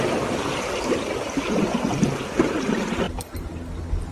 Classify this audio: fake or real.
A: real